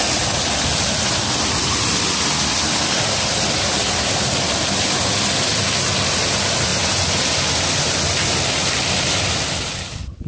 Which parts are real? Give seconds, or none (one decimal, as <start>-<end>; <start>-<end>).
0.0-10.3